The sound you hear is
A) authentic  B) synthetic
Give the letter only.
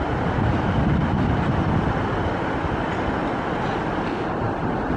A